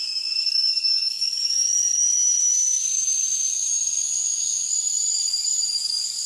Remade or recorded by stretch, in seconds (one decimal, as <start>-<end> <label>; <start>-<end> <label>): 0.0-6.3 remade